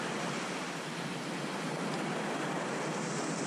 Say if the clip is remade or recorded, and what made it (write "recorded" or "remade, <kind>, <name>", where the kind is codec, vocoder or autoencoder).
recorded